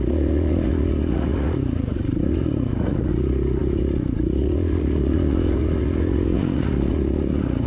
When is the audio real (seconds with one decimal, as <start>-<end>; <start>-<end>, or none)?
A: none